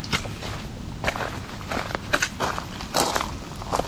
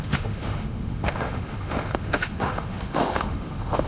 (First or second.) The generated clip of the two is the second